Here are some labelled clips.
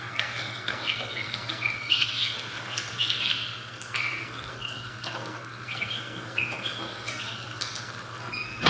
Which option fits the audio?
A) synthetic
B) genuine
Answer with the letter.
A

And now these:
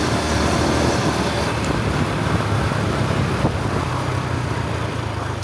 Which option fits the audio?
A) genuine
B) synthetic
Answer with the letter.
A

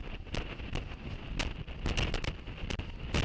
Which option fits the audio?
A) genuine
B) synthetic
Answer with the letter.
A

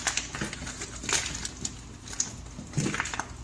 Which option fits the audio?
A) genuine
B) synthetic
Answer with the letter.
A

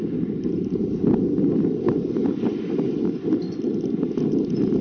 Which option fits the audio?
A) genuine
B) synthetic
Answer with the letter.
A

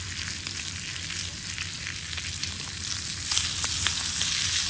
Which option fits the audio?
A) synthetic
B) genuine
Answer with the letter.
B